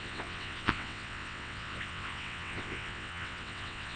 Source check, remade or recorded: remade